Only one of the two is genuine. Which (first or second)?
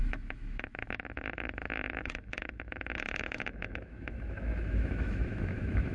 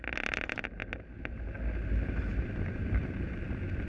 second